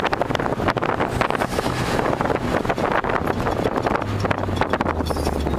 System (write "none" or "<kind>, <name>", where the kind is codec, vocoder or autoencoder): none